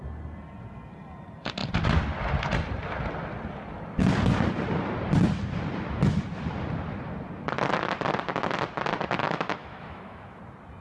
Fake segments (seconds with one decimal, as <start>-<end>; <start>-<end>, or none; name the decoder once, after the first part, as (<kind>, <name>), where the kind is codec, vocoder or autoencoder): 9.2-10.4 (autoencoder, DAC-VAE)